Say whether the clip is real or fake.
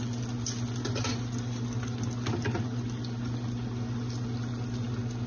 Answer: real